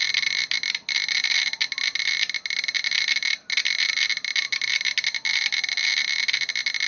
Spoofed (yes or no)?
no